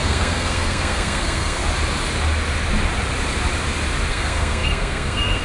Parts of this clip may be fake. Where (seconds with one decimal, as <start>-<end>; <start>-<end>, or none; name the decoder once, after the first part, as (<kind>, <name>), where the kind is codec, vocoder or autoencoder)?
0.0-1.6 (codec, SNAC); 4.1-5.4